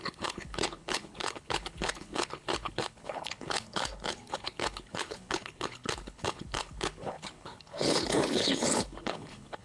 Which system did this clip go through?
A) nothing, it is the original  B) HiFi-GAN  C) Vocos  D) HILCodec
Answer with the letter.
D